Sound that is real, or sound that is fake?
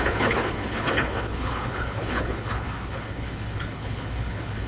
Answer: fake